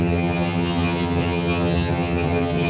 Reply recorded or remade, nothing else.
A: remade